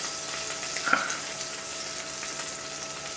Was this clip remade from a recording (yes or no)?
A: no